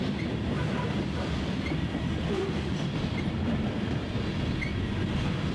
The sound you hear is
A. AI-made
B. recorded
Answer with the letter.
A